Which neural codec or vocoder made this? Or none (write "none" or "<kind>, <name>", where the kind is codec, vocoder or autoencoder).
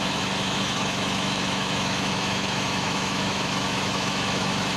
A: autoencoder, DAC-VAE